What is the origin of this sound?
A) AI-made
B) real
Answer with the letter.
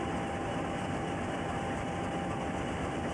B